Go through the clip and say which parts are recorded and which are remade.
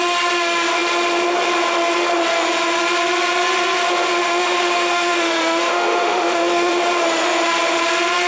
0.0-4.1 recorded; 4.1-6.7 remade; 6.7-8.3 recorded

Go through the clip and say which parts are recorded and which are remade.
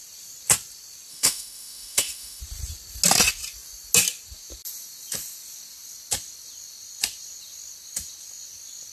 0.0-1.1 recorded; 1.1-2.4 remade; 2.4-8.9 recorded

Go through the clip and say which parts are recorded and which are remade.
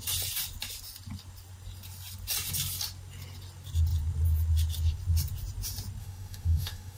0.0-6.0 recorded; 6.0-7.0 remade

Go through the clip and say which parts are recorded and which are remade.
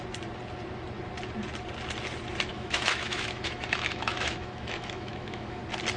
0.0-2.5 recorded; 2.5-5.6 remade; 5.6-6.0 recorded